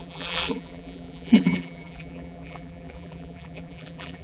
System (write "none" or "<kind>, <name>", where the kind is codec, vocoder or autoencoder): vocoder, BigVGAN v2